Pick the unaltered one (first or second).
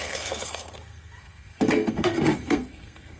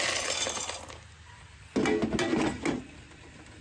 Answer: second